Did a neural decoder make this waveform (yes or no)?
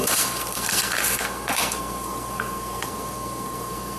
yes